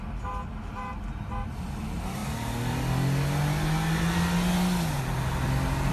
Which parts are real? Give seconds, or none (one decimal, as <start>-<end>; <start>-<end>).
0.0-5.9